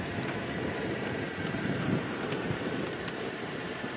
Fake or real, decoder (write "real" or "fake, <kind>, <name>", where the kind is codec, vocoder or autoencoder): fake, vocoder, BigVGAN v2